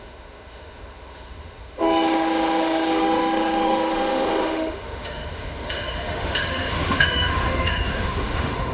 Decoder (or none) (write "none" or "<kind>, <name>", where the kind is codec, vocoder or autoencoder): autoencoder, DAC-VAE